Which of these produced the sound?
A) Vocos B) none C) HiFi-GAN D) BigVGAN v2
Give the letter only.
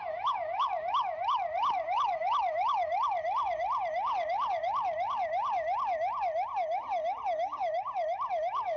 B